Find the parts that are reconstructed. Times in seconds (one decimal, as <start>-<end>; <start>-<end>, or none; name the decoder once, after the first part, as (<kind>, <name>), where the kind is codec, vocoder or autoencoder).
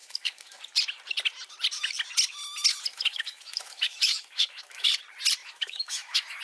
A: 0.0-0.6 (autoencoder, DAC-VAE); 2.9-4.9; 5.4-6.4